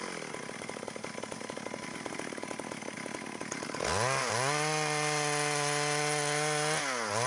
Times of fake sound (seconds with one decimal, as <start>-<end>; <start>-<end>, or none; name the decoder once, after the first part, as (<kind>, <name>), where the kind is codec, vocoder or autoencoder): none

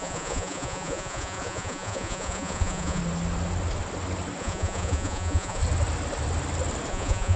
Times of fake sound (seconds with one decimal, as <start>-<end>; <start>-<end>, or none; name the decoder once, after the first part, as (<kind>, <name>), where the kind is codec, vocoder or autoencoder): 0.0-3.0 (vocoder, Vocos); 4.4-5.6; 6.9-7.4

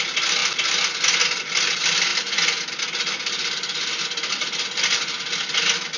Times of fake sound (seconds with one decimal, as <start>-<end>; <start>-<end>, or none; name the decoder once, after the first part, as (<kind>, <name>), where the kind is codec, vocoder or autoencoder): none

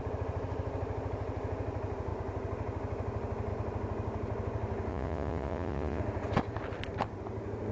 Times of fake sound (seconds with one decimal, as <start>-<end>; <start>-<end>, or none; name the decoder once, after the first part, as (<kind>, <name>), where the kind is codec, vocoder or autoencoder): 4.9-6.0 (vocoder, Vocos)

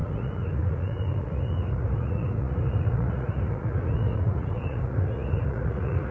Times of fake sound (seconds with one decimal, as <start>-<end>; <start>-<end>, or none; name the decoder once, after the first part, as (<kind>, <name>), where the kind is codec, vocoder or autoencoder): 0.0-6.1 (vocoder, Vocos)

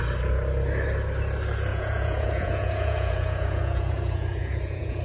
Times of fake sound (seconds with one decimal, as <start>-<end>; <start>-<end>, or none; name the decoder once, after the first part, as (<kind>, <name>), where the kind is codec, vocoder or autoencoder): 1.7-5.0 (vocoder, Vocos)

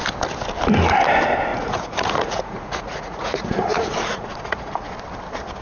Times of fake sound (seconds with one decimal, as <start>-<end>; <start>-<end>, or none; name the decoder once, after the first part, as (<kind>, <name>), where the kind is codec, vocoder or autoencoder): 1.5-4.9 (vocoder, Vocos)